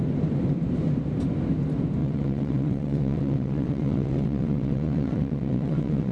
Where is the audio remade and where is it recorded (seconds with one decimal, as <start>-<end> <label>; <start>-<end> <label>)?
0.0-2.0 recorded; 2.0-6.1 remade